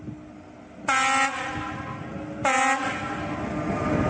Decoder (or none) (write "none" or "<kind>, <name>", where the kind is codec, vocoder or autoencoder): none